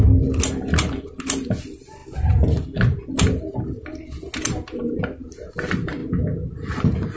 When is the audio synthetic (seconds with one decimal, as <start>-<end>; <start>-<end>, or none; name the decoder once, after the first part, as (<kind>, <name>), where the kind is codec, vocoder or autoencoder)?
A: none